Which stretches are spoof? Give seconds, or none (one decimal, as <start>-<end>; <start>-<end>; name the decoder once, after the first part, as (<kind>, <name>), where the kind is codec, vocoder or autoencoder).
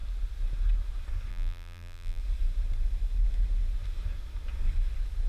1.3-2.2 (vocoder, BigVGAN v2)